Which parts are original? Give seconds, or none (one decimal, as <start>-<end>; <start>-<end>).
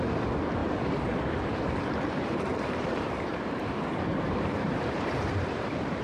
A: 0.0-2.5; 3.6-4.1